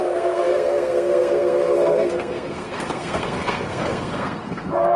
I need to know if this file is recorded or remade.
remade